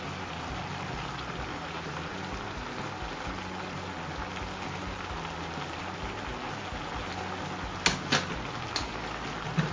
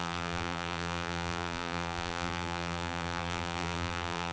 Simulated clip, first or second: second